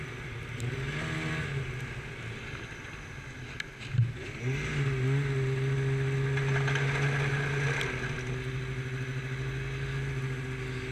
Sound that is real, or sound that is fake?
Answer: real